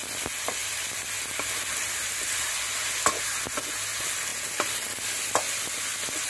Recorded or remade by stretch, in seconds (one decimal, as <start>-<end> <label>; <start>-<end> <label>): 0.0-6.3 recorded